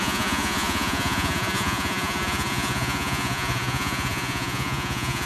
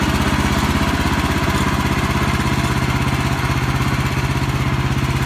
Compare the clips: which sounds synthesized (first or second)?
first